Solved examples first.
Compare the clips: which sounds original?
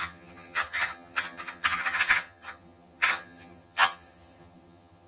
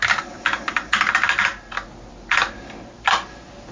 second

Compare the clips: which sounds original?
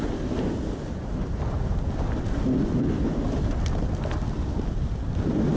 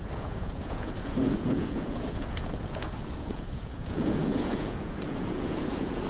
first